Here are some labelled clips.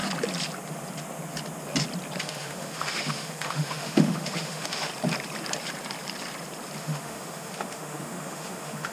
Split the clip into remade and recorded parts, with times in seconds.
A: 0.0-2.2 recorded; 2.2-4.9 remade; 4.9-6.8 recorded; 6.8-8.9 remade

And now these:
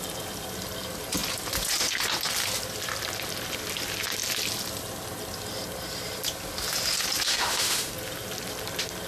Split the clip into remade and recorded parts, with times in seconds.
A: 0.0-7.3 recorded; 7.3-7.9 remade; 7.9-9.1 recorded

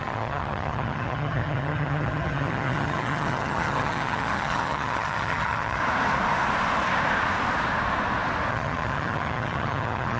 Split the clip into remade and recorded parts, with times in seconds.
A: 0.0-5.8 remade; 5.8-8.5 recorded; 8.5-10.2 remade

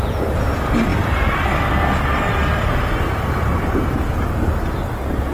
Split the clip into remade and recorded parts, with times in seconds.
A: 0.0-5.3 recorded

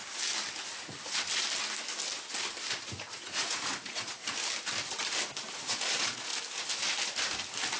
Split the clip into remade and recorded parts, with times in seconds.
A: 0.0-2.8 recorded; 2.8-4.2 remade; 4.2-5.5 recorded; 5.5-6.3 remade; 6.3-7.8 recorded

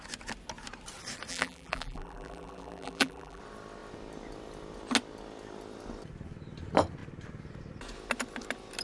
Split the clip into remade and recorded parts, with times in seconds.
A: 0.0-1.3 recorded; 1.3-3.4 remade; 3.4-8.8 recorded

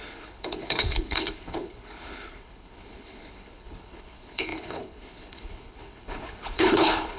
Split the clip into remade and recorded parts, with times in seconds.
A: 0.0-7.2 remade

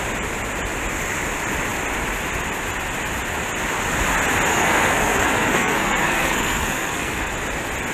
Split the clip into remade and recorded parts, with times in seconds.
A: 0.0-4.5 recorded; 4.5-7.3 remade; 7.3-7.9 recorded